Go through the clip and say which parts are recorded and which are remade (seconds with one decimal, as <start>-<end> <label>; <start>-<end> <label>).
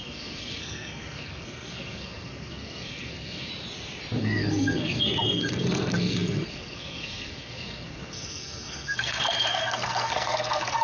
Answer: 0.0-3.5 remade; 3.5-4.2 recorded; 4.2-10.8 remade